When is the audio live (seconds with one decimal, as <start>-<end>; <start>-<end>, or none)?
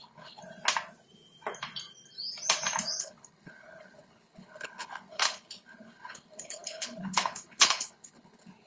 0.4-3.0